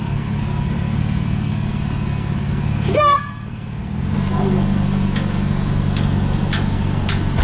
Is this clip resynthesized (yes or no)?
yes